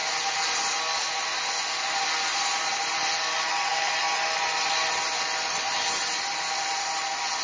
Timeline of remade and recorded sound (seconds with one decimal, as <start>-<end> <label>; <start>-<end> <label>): 0.0-7.4 recorded